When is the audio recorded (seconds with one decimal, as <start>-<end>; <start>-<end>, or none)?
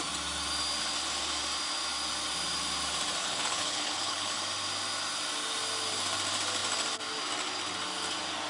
0.0-3.2; 4.4-8.5